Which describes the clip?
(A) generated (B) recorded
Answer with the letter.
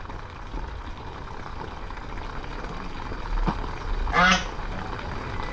B